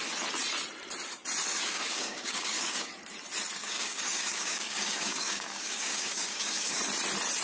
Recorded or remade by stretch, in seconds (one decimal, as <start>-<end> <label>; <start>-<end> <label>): 0.0-1.5 recorded; 1.5-2.9 remade; 2.9-3.6 recorded; 3.6-6.8 remade; 6.8-7.4 recorded